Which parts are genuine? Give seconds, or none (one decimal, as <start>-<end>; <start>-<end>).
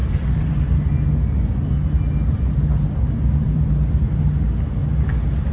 0.5-3.2; 4.0-5.5